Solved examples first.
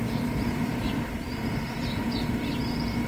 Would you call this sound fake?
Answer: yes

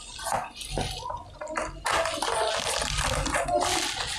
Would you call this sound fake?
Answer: no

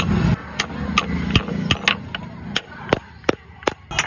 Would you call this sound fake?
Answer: no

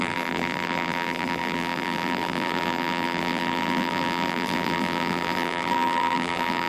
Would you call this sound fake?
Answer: yes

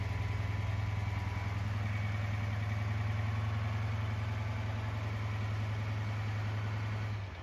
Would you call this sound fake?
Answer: no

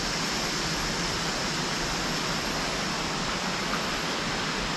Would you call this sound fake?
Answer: no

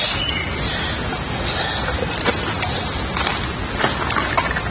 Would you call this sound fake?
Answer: no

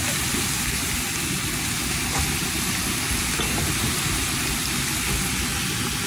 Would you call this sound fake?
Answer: no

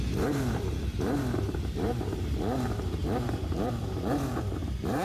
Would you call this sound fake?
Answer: yes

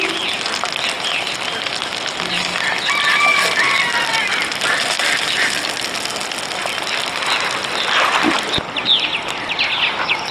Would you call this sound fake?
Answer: no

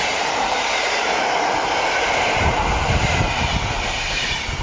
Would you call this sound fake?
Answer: no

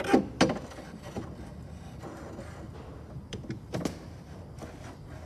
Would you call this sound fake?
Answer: no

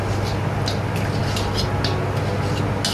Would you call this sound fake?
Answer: no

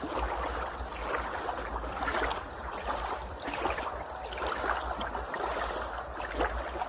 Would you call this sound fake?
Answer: no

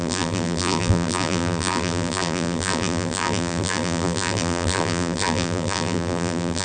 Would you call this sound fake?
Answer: yes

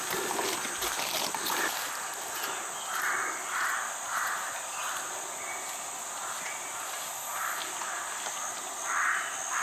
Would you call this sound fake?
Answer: no